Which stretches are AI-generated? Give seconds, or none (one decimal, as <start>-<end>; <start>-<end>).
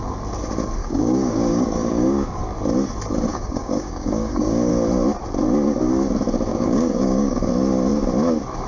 0.8-2.4; 3.3-4.7; 6.5-7.5